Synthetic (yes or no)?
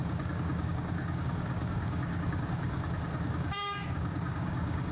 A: yes